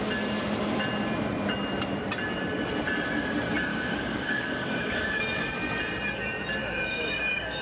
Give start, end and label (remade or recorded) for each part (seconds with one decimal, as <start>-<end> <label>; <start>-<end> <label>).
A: 0.0-3.7 recorded; 3.7-5.2 remade; 5.2-6.6 recorded; 6.6-7.6 remade